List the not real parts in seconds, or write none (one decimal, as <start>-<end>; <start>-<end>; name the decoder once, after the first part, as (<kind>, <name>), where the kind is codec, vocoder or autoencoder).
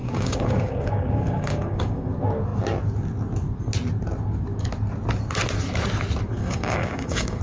0.0-2.1 (codec, DAC); 6.4-7.4